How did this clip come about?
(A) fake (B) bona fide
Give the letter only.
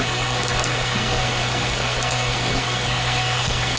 A